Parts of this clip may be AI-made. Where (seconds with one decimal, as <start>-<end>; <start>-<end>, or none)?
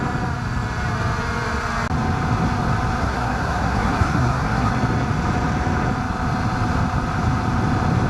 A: 3.0-4.7